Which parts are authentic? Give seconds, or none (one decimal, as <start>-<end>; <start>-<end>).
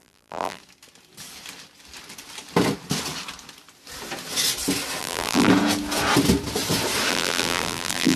0.6-5.0; 5.5-7.1